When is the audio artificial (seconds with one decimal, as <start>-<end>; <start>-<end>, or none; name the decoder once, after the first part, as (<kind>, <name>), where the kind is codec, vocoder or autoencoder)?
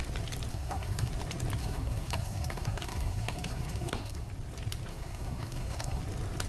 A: 0.5-1.1 (codec, SNAC); 1.6-4.3; 4.9-6.0